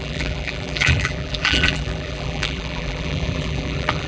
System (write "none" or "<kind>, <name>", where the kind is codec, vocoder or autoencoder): vocoder, BigVGAN v2